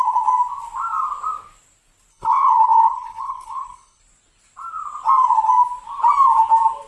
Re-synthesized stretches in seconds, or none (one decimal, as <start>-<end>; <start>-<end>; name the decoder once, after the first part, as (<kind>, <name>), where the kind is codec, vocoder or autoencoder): 2.1-4.0 (codec, HILCodec)